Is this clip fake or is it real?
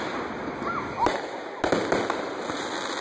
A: real